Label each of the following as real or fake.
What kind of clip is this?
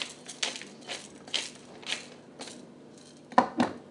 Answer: real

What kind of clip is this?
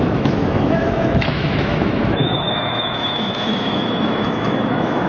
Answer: fake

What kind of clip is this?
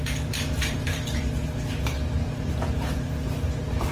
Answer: fake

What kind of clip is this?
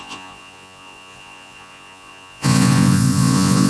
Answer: fake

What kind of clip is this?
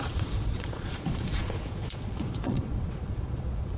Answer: fake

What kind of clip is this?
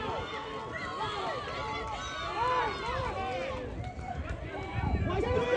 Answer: fake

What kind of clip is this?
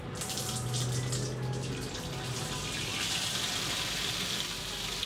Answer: real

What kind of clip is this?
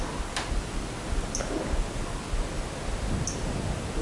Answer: real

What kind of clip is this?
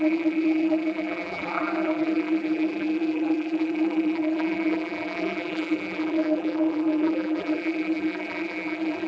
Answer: fake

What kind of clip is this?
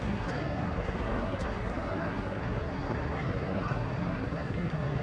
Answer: fake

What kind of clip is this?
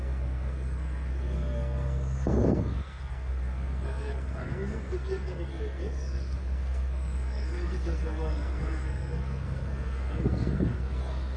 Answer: fake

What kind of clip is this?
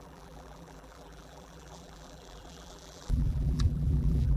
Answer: fake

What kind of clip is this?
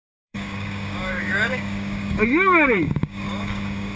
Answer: fake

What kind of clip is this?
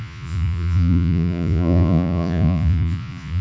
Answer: fake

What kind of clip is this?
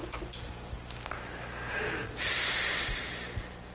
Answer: real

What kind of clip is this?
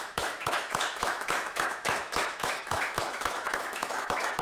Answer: fake